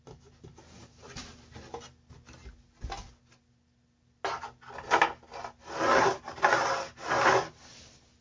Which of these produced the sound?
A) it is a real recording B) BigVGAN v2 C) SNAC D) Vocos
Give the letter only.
A